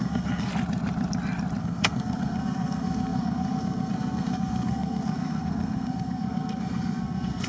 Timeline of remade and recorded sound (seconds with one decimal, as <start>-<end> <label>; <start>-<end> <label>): 0.0-0.5 remade; 0.5-1.6 recorded; 1.6-7.5 remade